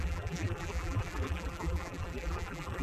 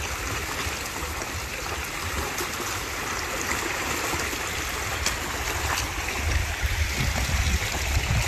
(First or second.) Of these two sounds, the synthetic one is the first